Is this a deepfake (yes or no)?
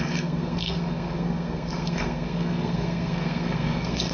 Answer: yes